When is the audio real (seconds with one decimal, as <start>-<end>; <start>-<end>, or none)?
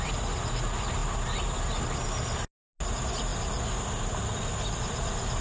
0.0-5.4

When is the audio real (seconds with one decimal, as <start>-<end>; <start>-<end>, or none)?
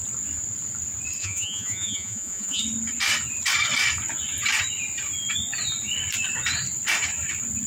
0.0-1.2; 2.6-7.7